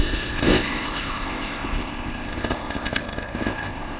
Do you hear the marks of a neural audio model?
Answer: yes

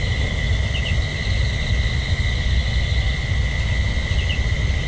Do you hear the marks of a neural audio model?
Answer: no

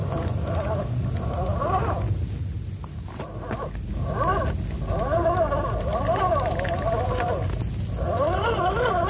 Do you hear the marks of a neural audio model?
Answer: no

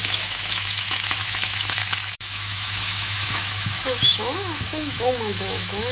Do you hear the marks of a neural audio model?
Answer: yes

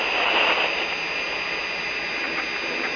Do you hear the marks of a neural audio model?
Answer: no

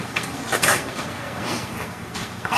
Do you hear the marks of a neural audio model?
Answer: yes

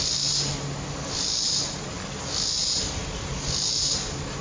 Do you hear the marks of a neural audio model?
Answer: no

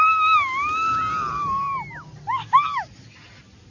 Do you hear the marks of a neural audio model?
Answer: no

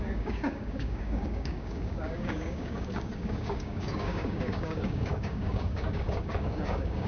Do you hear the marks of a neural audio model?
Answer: yes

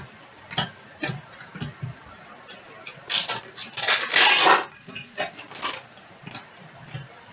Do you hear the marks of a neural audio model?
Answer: yes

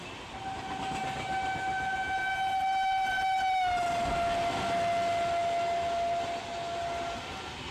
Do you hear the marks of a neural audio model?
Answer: no